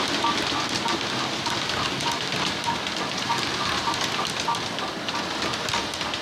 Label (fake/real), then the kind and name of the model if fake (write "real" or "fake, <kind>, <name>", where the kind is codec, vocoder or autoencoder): real